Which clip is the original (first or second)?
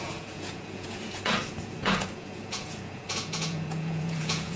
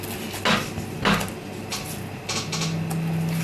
second